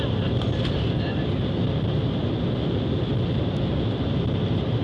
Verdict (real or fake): real